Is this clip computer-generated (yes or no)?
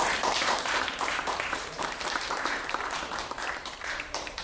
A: yes